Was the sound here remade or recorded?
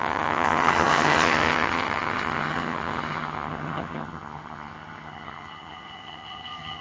remade